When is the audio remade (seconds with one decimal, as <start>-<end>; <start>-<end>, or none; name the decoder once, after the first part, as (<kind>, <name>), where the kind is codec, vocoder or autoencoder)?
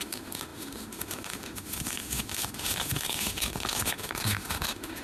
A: 0.0-5.0 (autoencoder, DAC-VAE)